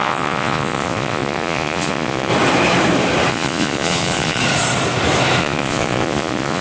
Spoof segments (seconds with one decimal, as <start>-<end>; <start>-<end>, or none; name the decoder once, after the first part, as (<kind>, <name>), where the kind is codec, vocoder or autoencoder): 0.0-2.3 (vocoder, Vocos); 3.3-4.4; 5.4-6.6